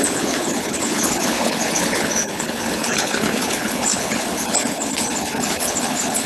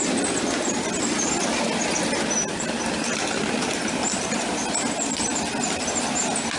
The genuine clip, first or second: second